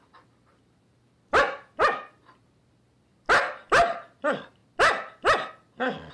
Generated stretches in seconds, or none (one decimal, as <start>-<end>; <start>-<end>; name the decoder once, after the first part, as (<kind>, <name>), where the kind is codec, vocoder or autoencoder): none